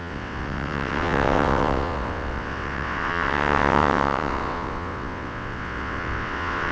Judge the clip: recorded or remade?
remade